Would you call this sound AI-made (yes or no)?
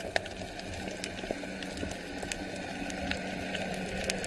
no